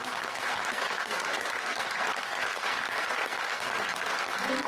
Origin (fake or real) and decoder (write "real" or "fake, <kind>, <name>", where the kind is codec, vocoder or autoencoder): fake, codec, SNAC